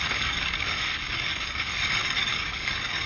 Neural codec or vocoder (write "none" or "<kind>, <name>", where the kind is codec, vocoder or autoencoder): codec, DAC